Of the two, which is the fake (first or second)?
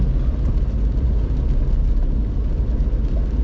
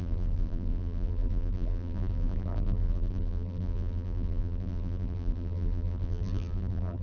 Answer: second